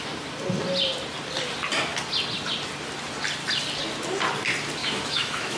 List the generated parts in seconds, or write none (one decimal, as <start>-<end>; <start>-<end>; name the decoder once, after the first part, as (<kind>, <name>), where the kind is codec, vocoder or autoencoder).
4.8-5.6 (autoencoder, DAC-VAE)